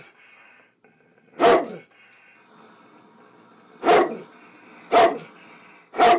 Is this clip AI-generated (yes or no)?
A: no